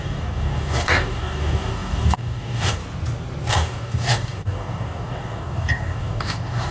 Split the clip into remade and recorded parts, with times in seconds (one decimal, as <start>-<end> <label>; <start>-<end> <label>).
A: 0.0-2.8 remade; 2.8-3.5 recorded; 3.5-6.7 remade